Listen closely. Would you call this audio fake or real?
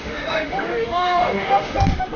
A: fake